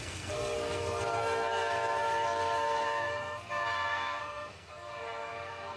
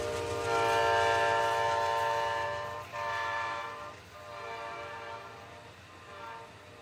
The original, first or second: second